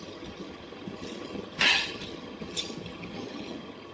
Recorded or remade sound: remade